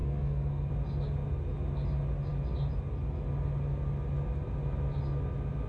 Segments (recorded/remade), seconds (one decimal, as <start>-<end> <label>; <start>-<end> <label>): 0.0-0.7 remade; 0.7-5.7 recorded